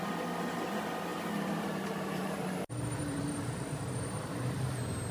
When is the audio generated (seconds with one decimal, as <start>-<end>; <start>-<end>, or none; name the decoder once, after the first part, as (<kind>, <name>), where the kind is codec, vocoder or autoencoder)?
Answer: 1.1-4.2 (vocoder, BigVGAN v2)